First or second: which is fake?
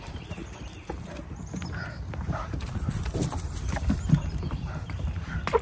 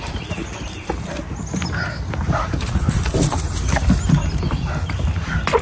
first